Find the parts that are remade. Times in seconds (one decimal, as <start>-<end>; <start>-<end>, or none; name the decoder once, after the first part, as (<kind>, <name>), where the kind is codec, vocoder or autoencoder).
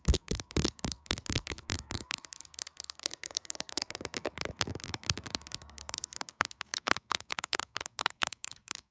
0.0-8.9 (codec, SNAC)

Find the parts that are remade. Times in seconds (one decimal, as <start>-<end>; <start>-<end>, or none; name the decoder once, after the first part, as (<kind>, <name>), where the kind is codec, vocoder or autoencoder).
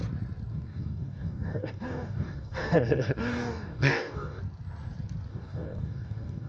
0.5-4.4 (codec, DAC); 5.3-6.5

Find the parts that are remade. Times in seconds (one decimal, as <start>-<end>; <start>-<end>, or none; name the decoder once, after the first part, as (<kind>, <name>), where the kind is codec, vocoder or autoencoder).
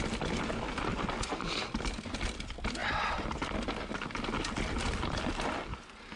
none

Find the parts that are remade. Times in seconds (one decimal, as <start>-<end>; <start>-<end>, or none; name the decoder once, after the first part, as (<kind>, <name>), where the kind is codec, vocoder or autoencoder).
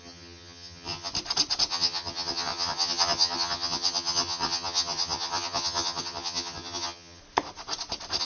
0.0-1.1 (vocoder, HiFi-GAN); 1.7-7.2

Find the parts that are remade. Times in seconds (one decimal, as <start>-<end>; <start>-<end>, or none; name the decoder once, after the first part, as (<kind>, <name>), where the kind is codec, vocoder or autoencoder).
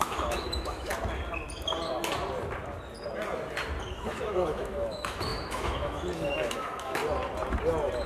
0.0-0.9 (autoencoder, DAC-VAE); 3.9-7.0